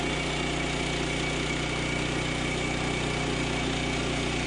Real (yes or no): yes